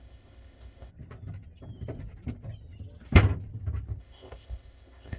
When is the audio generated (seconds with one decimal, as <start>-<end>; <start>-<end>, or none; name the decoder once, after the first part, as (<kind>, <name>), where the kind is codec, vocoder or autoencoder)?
0.0-0.9 (codec, ZipCodec); 4.0-5.2